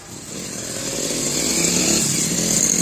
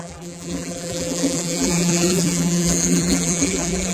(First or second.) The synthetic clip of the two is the second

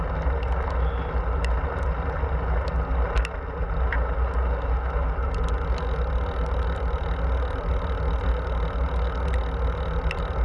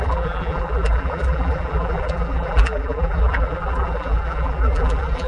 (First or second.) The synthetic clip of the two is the second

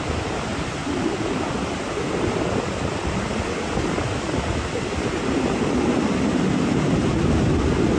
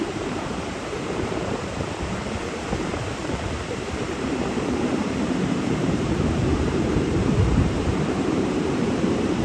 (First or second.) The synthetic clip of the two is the second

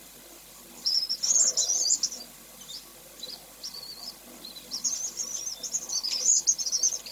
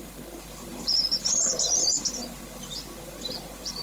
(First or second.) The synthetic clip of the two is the second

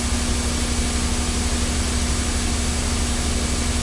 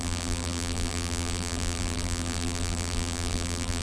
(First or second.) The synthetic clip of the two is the second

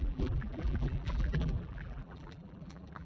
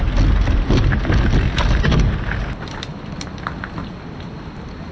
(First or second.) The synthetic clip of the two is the first